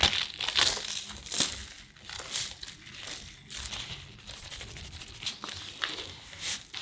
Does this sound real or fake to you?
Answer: real